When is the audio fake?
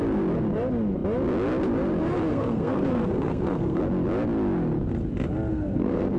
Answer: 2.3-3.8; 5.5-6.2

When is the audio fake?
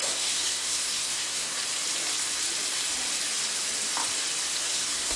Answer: 0.0-1.6; 4.6-5.2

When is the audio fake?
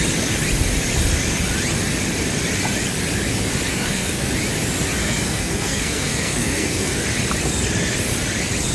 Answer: 3.7-4.3; 5.0-7.0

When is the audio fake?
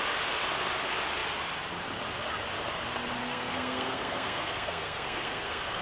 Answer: 3.2-5.8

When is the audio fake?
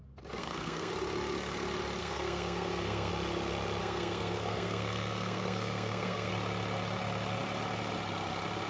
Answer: 0.4-0.9; 2.0-3.1; 3.8-6.3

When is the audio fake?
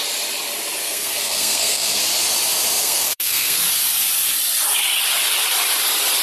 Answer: 0.8-2.0; 2.8-3.6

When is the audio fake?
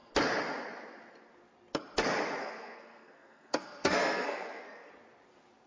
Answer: 2.4-4.9